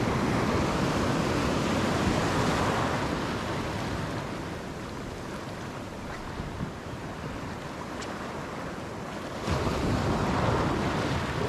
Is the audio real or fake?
real